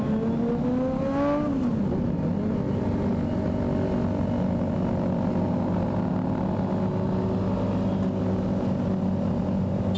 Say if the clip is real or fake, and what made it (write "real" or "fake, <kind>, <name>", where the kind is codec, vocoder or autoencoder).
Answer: real